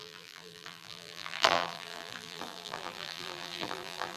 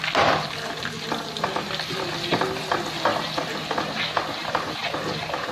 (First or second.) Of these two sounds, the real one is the second